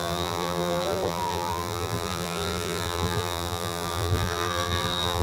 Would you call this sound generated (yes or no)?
yes